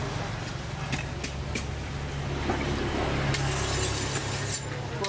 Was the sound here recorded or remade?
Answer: recorded